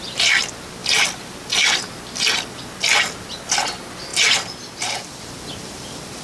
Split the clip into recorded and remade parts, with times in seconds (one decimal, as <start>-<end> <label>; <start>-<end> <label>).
0.0-6.2 recorded